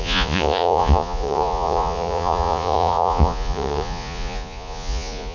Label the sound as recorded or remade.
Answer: remade